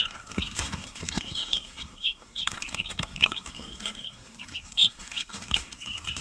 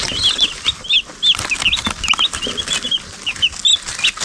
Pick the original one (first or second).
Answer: second